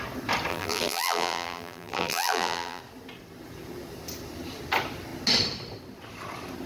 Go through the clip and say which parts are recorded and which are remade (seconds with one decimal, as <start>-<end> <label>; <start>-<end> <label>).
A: 0.0-0.5 recorded; 0.5-2.8 remade; 2.8-6.7 recorded